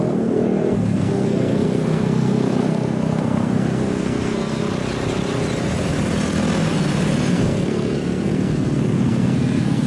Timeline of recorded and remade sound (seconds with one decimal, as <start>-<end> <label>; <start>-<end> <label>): 0.0-4.6 remade; 4.6-7.3 recorded; 7.3-9.9 remade